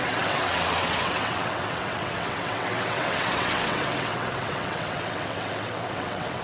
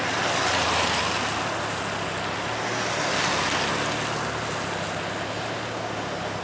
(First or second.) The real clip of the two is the second